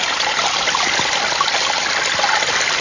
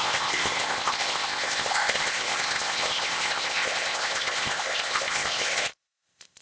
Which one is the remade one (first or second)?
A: second